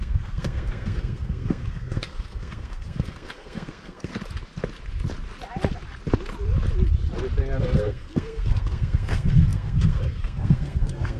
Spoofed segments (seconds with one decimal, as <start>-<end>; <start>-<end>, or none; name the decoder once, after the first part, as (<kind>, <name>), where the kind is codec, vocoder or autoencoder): 0.0-4.1 (codec, SNAC); 7.6-11.2